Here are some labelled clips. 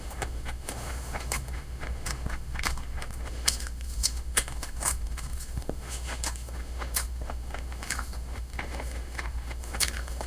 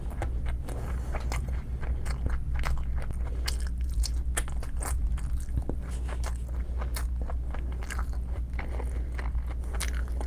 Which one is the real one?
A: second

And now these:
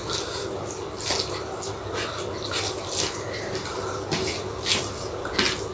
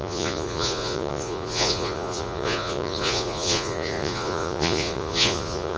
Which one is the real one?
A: first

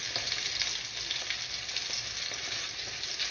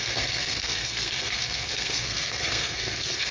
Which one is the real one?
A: first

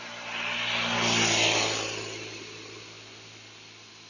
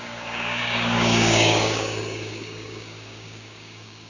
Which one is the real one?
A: first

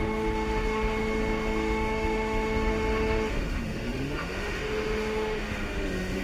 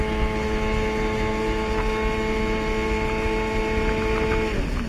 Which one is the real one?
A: second